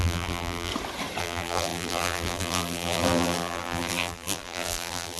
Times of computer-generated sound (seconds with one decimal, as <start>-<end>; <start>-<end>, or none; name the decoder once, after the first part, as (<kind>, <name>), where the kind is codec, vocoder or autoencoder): 0.0-0.7 (vocoder, BigVGAN v2); 1.2-5.2